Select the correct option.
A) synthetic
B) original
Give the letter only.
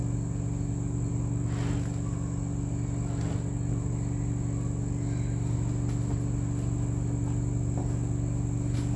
B